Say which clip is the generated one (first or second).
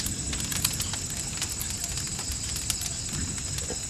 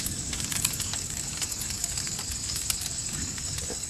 second